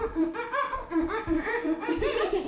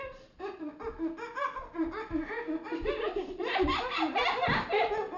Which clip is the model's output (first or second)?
first